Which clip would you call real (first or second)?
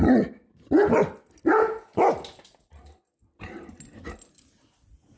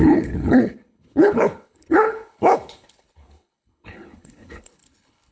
first